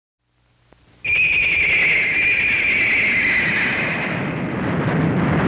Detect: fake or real real